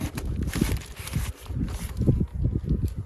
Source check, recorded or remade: recorded